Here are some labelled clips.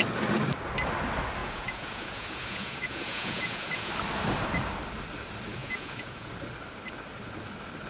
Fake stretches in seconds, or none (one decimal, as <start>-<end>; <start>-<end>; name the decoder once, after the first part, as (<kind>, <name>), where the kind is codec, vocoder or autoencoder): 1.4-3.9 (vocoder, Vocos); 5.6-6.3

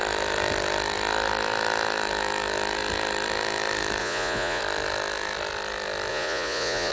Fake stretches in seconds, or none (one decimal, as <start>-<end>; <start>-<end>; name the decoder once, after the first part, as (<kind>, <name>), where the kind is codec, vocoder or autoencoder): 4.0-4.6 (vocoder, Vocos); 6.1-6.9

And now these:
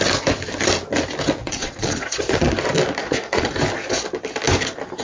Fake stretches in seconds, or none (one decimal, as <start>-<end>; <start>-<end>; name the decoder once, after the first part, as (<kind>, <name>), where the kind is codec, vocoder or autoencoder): 1.4-2.5 (vocoder, Vocos); 3.0-3.5

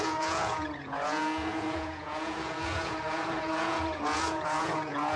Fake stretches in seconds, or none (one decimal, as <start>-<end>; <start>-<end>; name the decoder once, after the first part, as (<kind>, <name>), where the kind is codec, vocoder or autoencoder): 0.0-5.2 (vocoder, Vocos)